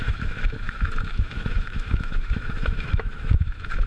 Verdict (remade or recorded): remade